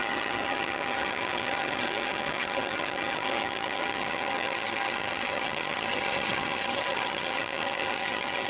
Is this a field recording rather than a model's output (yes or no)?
no